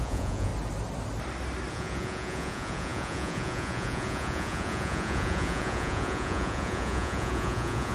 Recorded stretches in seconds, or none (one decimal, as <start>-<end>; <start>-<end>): 0.5-1.7